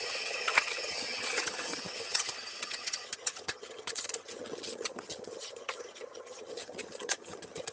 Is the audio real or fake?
fake